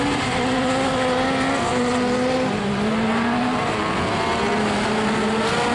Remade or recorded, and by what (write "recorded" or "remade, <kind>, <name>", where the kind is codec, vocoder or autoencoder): recorded